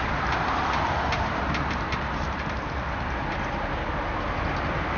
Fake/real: real